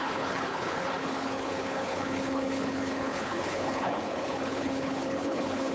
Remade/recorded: remade